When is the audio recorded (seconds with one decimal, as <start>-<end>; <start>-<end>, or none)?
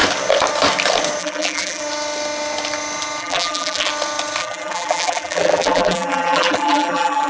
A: 0.0-1.2; 1.8-3.2; 3.9-4.4